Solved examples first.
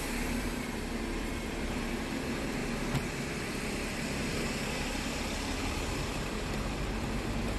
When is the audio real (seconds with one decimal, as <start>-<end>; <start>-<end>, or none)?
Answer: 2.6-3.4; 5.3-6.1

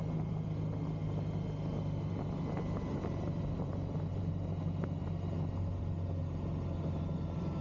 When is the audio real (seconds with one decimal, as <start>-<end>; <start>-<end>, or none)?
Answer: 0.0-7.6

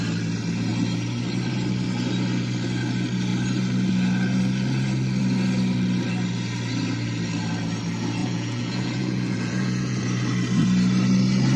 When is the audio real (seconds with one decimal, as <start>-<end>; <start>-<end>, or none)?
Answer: 0.0-8.2; 10.0-11.6

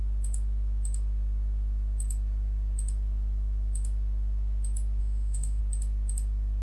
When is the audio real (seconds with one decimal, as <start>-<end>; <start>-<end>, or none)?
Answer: 0.0-5.0; 5.6-6.6

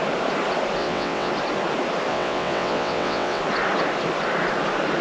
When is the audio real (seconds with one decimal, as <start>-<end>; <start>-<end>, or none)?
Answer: 0.0-0.8; 1.3-2.1; 3.4-5.0

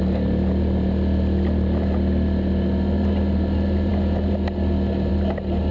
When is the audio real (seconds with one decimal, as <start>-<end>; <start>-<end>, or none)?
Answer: 0.0-5.7

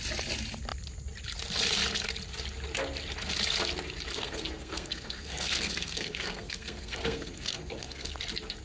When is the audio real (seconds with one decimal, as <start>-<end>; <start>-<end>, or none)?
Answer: 0.0-4.1; 8.1-8.6